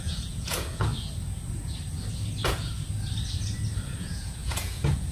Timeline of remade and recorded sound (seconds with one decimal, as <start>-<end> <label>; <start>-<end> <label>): 0.0-0.9 remade; 0.9-4.0 recorded; 4.0-5.1 remade